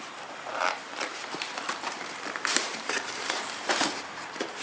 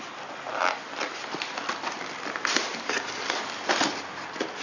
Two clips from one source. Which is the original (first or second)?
second